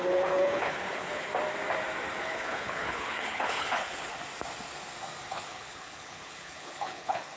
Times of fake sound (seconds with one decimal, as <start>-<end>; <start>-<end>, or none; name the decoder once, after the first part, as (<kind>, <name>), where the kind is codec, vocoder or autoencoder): 0.0-1.3 (codec, HILCodec); 2.2-4.1; 5.3-7.4